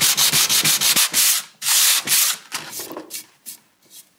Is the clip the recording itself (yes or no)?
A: yes